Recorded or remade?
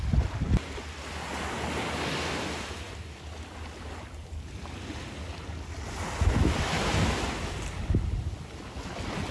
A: recorded